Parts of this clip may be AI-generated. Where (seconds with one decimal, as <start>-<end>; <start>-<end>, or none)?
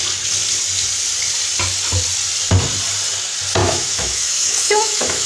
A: 3.6-5.3